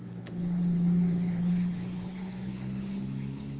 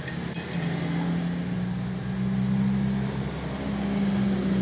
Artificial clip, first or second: first